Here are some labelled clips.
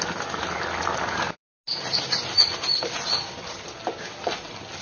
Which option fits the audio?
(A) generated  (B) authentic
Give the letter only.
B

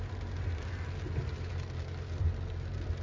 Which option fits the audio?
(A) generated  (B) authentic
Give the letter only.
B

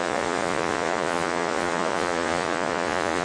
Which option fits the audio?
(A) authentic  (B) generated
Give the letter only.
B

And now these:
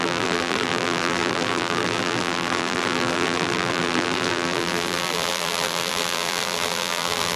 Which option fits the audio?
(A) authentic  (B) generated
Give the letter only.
B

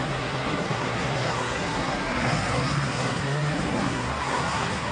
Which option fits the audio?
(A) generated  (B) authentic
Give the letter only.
A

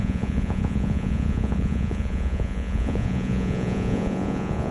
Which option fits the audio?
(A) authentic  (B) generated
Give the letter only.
B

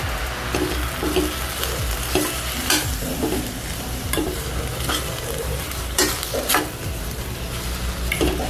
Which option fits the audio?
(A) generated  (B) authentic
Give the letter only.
B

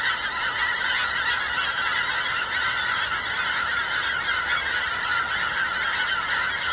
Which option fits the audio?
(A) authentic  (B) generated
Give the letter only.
A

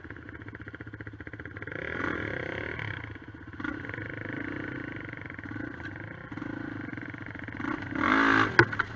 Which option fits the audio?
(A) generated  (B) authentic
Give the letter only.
B